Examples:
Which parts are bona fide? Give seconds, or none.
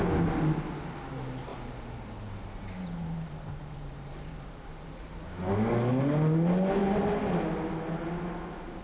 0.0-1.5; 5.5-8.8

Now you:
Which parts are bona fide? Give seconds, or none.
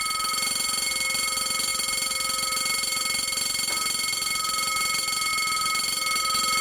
0.0-6.6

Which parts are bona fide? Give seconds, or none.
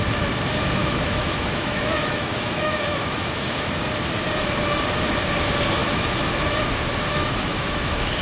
0.0-0.8; 3.7-5.8; 6.3-7.1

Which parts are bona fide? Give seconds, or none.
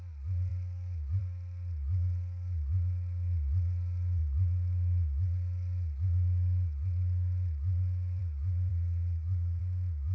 0.0-8.7; 9.6-10.1